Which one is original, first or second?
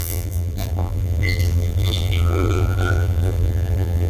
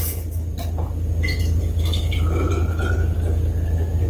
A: second